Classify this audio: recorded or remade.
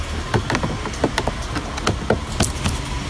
recorded